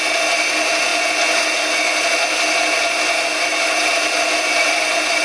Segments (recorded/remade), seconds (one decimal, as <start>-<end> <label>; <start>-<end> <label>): 0.0-5.2 recorded